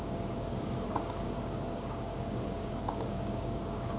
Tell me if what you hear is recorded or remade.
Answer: remade